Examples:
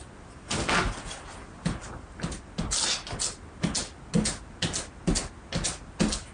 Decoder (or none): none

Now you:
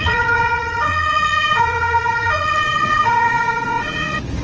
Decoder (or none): vocoder, Vocos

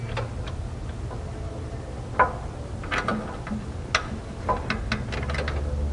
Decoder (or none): none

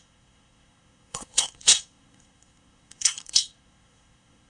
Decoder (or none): codec, SNAC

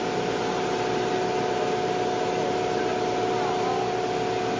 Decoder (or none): none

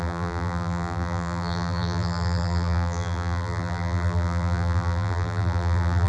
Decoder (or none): vocoder, BigVGAN v2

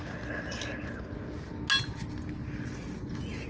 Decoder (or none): none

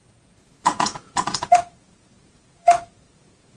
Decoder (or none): vocoder, Vocos